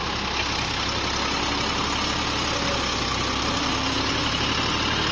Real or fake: real